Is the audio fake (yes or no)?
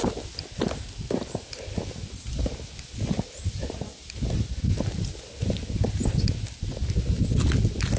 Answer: no